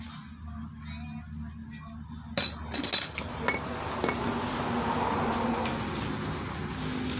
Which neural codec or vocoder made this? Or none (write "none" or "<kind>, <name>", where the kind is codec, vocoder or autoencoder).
none